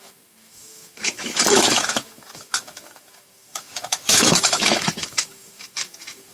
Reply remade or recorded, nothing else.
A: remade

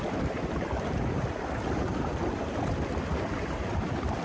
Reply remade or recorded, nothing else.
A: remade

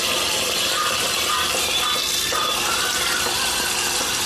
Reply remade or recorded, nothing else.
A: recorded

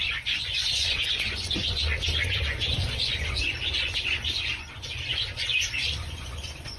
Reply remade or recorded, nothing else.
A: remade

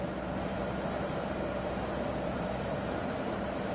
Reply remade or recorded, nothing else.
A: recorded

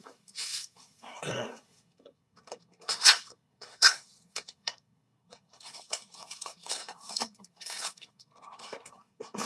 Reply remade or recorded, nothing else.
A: remade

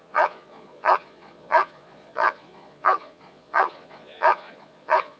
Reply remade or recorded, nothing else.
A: remade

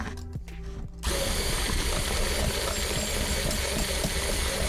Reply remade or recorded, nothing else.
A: recorded